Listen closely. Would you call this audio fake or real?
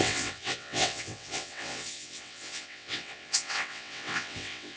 fake